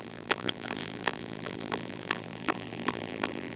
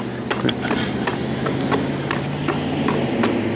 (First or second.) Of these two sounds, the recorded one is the second